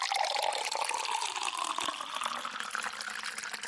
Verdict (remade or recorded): recorded